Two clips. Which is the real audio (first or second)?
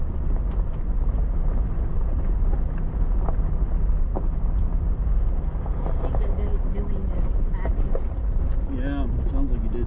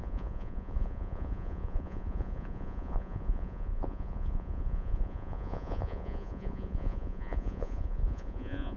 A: first